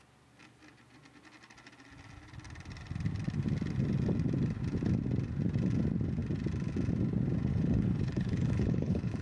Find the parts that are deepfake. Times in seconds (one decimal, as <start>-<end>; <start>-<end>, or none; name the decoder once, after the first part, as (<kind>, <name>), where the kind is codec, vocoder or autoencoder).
7.5-9.2 (codec, HILCodec)